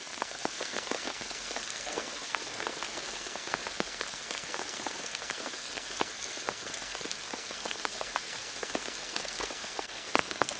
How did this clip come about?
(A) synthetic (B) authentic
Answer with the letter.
A